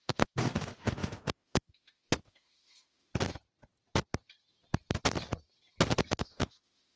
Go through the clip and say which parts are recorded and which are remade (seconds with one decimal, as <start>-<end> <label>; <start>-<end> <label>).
0.0-3.1 remade; 3.1-6.2 recorded; 6.2-7.0 remade